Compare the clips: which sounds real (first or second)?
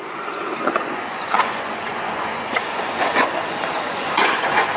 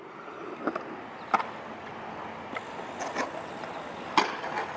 second